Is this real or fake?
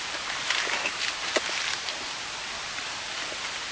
real